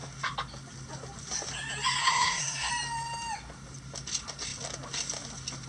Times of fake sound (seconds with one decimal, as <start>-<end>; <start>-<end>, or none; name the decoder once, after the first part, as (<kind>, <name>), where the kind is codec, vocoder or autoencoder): 2.0-2.7 (codec, SNAC)